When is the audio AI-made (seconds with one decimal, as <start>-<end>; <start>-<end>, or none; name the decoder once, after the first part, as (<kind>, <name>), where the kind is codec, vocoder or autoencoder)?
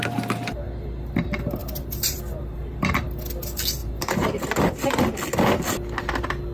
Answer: 1.6-3.0 (vocoder, BigVGAN v2); 3.8-5.0